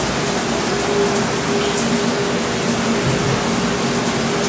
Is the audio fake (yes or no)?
no